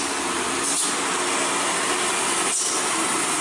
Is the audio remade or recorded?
recorded